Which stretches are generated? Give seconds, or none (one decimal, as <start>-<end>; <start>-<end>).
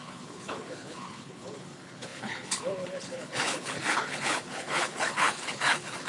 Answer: 0.0-6.1